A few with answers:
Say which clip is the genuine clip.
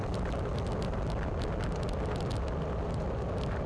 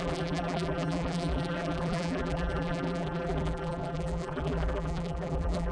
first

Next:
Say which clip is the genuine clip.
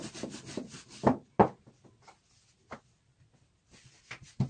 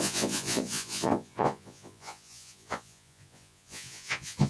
first